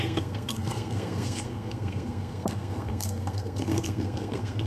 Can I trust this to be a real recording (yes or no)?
no